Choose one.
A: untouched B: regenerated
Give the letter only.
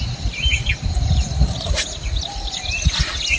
A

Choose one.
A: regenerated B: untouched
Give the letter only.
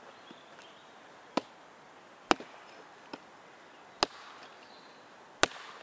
B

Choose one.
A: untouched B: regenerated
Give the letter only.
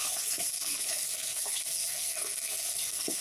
B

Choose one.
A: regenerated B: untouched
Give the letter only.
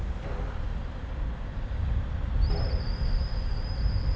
B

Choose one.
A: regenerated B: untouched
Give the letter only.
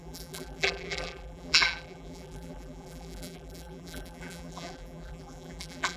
A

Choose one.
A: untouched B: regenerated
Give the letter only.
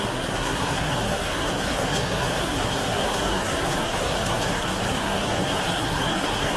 B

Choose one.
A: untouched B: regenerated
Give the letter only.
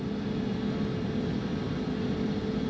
A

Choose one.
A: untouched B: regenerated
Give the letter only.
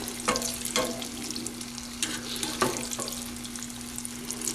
A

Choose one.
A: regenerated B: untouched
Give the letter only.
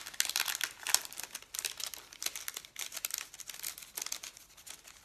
B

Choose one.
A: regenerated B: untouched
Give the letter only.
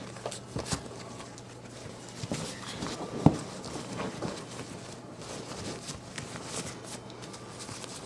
B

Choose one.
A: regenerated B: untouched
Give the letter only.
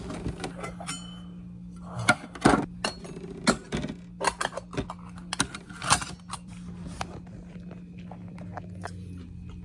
B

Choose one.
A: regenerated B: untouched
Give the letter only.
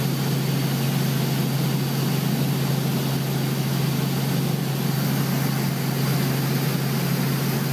B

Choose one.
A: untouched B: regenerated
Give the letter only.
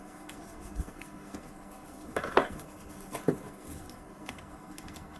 B